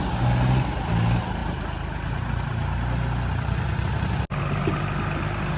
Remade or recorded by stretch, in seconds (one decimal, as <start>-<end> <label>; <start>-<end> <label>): 0.0-5.6 recorded

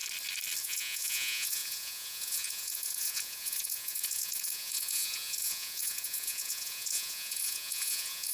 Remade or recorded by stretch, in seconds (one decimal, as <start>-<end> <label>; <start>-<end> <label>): 0.0-0.6 recorded; 0.6-8.3 remade

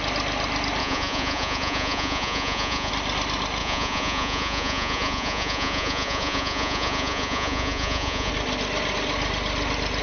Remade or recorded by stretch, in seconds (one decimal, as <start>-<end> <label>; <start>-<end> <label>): 0.0-0.8 recorded; 0.8-2.9 remade; 2.9-3.6 recorded; 3.6-8.3 remade; 8.3-10.0 recorded